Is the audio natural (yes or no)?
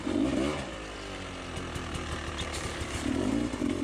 yes